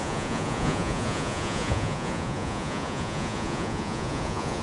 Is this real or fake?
fake